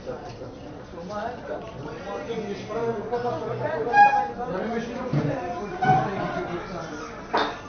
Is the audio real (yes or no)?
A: no